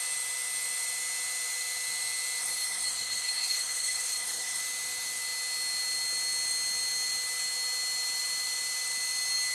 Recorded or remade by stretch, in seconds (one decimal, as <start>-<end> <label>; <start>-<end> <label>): 0.0-2.4 recorded; 2.4-4.6 remade; 4.6-9.5 recorded